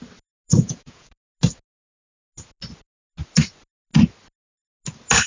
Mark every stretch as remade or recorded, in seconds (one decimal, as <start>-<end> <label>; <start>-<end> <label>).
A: 0.0-0.5 recorded; 0.5-1.1 remade; 1.1-5.3 recorded